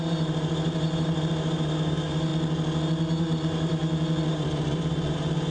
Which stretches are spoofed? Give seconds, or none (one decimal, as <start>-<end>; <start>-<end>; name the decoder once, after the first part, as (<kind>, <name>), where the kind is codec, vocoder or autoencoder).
0.0-2.3 (vocoder, BigVGAN v2); 3.2-3.8; 4.3-5.5